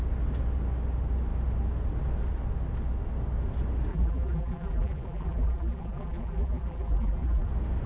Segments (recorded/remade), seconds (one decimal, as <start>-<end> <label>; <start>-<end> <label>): 0.0-3.9 recorded; 3.9-7.5 remade; 7.5-7.9 recorded